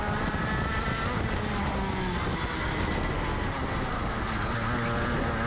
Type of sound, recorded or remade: recorded